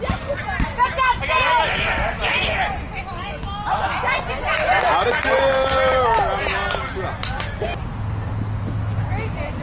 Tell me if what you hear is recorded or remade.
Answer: recorded